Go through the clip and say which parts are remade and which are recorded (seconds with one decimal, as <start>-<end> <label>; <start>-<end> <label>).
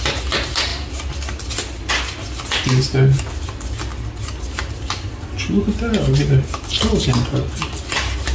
0.0-8.3 recorded